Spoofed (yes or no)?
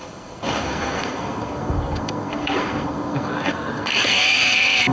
yes